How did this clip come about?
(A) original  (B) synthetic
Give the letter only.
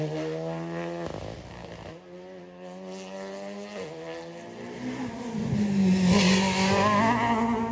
A